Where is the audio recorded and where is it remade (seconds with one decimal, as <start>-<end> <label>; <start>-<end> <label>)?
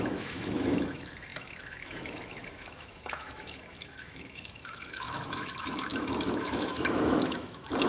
0.0-7.9 remade